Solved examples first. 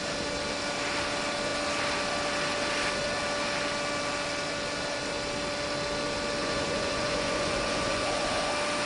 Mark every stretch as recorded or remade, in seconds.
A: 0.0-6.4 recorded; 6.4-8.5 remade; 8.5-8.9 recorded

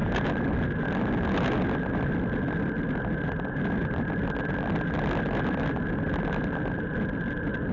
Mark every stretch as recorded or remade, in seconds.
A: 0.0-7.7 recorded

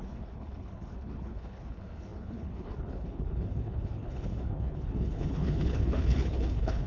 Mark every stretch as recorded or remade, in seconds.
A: 0.0-6.9 remade

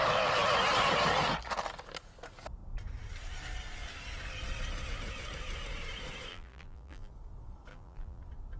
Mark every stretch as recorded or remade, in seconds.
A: 0.0-6.3 recorded; 6.3-7.1 remade; 7.1-7.7 recorded; 7.7-8.2 remade; 8.2-8.6 recorded

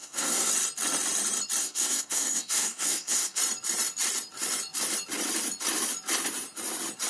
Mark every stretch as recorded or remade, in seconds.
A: 0.0-0.5 remade; 0.5-1.6 recorded; 1.6-3.4 remade; 3.4-7.1 recorded